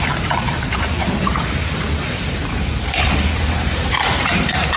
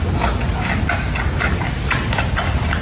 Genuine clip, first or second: second